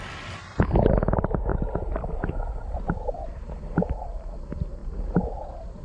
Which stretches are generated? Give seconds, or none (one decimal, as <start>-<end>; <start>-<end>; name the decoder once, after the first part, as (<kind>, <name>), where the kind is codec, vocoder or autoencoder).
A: none

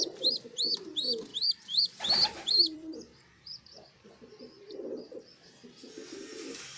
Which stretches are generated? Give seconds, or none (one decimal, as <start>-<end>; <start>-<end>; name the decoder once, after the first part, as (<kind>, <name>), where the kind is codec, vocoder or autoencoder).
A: 1.3-5.2 (vocoder, BigVGAN v2)

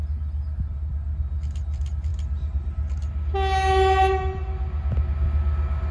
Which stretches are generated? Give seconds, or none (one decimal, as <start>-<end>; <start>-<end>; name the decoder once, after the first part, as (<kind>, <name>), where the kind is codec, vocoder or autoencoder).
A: none